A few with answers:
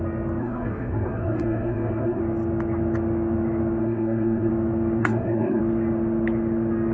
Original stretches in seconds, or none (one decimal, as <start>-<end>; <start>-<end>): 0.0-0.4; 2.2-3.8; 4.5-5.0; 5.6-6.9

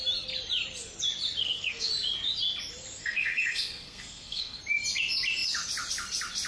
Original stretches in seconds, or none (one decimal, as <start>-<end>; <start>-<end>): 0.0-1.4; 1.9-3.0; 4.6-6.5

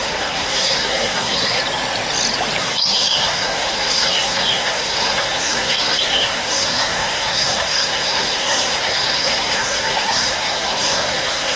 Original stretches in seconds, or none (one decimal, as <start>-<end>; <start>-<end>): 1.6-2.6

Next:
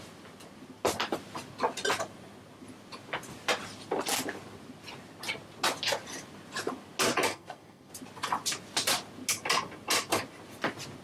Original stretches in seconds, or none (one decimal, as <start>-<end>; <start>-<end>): 0.0-7.3; 7.9-11.0

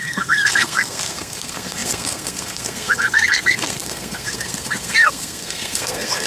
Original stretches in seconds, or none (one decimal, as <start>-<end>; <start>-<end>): none

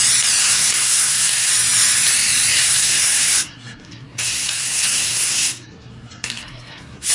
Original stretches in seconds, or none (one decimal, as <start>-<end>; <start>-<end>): 0.0-0.4; 1.5-2.5

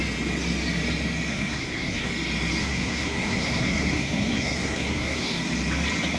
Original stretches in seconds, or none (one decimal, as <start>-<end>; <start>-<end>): 0.0-1.3; 2.1-2.6; 5.4-6.2